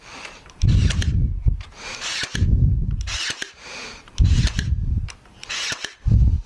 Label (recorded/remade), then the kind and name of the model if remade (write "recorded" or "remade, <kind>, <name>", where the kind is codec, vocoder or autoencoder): remade, vocoder, BigVGAN v2